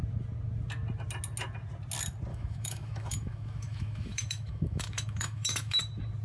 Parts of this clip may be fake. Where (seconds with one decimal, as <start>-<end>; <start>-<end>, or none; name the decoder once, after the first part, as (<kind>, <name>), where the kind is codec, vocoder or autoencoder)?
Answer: 2.3-5.8 (autoencoder, DAC-VAE)